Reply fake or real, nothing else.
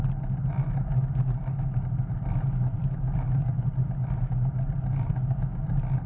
real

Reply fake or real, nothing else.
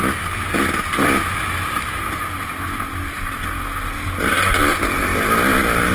real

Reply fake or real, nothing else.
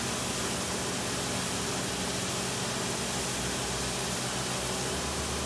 real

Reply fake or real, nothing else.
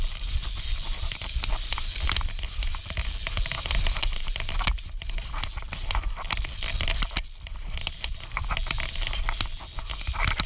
real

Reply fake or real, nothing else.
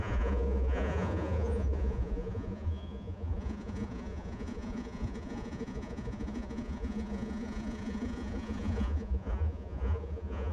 fake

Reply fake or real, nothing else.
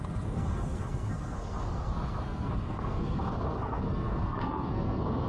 fake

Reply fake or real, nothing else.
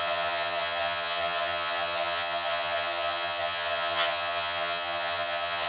fake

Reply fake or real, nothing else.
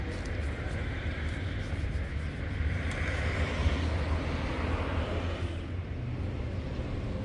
real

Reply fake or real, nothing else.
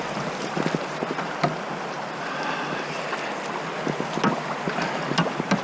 real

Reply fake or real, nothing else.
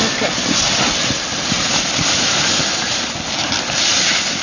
real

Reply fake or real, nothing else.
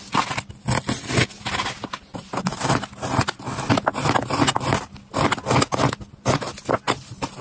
real